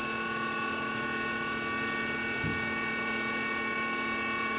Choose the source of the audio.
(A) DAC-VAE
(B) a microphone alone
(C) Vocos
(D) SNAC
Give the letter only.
B